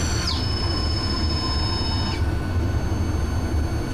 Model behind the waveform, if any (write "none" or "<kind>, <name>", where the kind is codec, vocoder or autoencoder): none